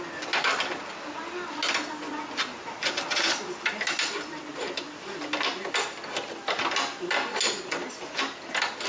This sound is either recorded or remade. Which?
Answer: recorded